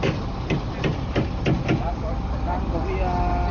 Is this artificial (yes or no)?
no